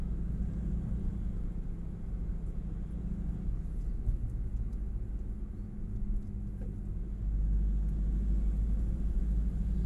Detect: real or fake real